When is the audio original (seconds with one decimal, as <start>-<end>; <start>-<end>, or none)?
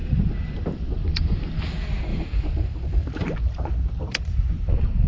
1.6-2.1; 3.7-5.1